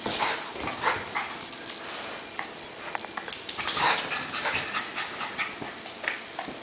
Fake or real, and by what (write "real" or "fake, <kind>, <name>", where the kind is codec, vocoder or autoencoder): real